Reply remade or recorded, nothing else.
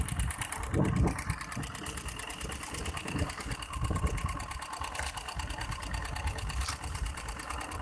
recorded